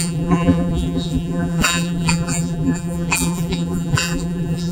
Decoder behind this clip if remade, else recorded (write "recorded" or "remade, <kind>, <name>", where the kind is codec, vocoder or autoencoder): remade, vocoder, BigVGAN v2